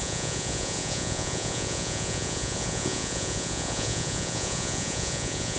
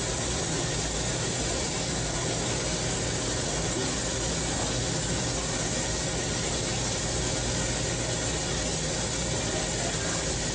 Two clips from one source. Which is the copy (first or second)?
first